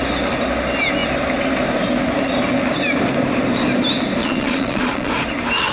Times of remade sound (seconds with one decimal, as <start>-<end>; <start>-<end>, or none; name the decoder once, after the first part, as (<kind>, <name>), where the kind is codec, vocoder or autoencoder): 4.2-5.1 (vocoder, Vocos)

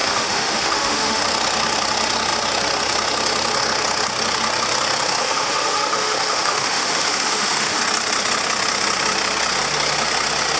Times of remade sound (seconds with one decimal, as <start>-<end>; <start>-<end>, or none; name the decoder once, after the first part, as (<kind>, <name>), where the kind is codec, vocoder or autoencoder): 0.0-1.2 (autoencoder, DAC-VAE); 5.2-7.8

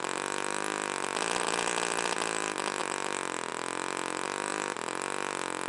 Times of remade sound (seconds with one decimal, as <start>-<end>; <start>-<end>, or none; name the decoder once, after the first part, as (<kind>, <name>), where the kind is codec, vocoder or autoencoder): none

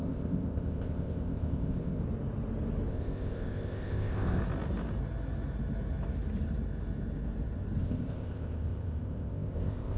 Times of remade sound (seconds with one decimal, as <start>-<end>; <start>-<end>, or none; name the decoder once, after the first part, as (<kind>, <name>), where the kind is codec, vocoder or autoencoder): 0.0-2.0 (codec, ZipCodec); 2.9-4.4; 7.8-10.0